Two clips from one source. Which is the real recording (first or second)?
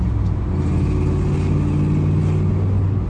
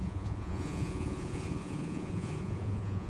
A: first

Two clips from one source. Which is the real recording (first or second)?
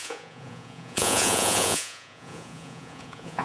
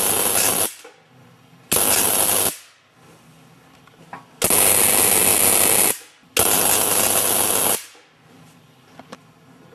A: second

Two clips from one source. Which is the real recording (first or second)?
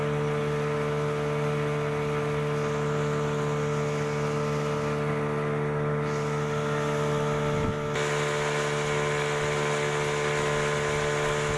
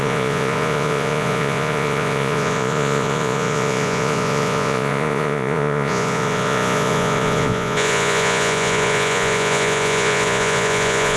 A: first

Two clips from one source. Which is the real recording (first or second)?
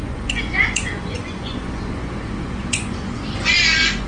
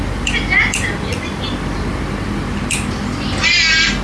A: second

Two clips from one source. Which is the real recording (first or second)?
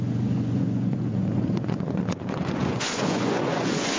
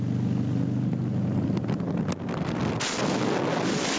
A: second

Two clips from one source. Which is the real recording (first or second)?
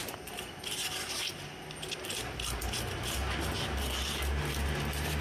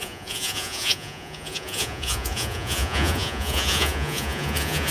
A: first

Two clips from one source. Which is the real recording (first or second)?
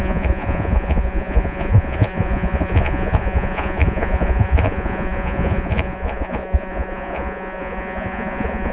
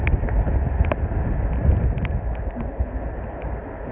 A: second